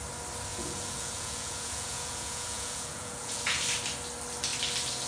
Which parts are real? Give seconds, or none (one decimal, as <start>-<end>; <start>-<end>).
0.0-0.5; 3.6-5.1